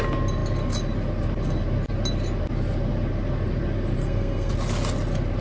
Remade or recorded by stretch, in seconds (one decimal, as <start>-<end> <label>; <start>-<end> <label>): 0.0-4.0 recorded; 4.0-4.5 remade; 4.5-5.4 recorded